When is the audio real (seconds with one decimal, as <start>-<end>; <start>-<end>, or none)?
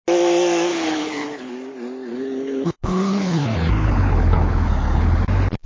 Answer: 0.0-0.7; 1.5-2.1; 5.2-5.7